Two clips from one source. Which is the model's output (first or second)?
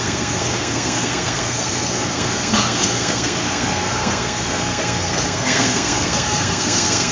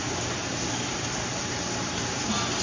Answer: first